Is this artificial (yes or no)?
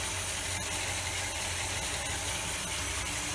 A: no